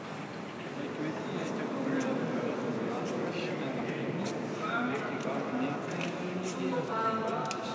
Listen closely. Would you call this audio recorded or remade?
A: recorded